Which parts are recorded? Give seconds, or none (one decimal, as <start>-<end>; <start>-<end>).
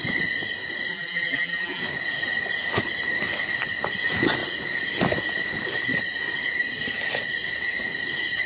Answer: 0.0-0.9; 1.8-8.5